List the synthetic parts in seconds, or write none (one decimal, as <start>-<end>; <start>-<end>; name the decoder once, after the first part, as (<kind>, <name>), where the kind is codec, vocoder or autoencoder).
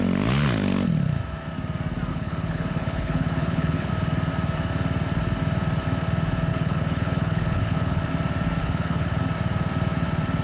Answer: 2.1-3.9 (codec, HILCodec); 6.5-8.0; 8.6-9.2